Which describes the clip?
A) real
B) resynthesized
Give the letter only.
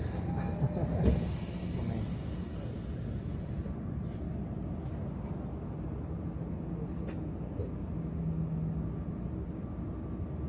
A